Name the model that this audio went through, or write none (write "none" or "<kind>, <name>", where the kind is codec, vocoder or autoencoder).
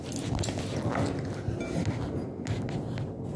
none